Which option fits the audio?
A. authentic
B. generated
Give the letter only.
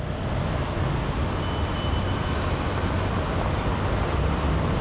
A